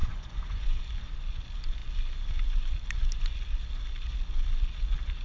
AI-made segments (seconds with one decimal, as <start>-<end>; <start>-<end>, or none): 0.0-0.8

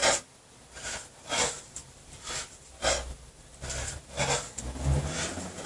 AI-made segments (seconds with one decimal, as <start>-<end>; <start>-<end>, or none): 0.0-0.6

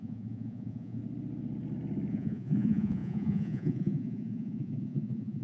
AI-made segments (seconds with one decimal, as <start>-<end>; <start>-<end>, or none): 0.0-1.0; 2.1-5.4

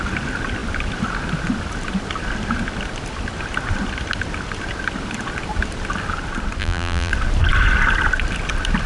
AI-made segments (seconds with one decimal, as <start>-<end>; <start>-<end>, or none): 6.6-7.1

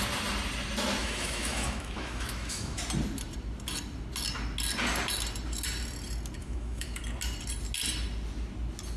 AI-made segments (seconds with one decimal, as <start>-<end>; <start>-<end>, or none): 1.0-2.8; 6.4-7.0

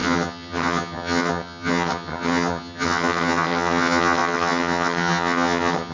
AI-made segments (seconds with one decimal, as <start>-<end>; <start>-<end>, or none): 0.0-5.9

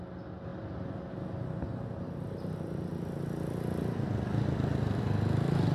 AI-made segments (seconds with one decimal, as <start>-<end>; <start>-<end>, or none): none